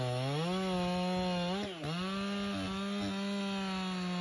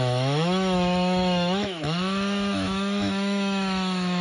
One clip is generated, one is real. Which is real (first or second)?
first